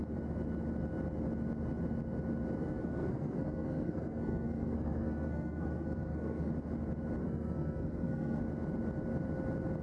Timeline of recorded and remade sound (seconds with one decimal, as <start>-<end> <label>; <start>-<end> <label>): 0.0-2.6 recorded; 2.6-6.5 remade; 6.5-7.2 recorded; 7.2-8.4 remade; 8.4-9.8 recorded